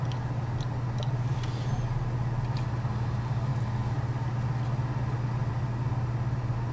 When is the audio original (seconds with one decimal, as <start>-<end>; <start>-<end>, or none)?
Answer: 0.0-6.7